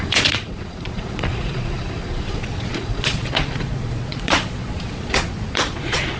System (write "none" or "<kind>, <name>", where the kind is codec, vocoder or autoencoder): vocoder, Vocos